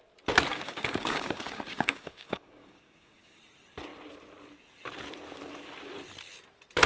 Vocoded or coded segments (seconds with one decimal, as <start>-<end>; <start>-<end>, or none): 0.5-3.4